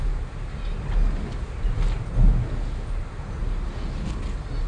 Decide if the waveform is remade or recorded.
recorded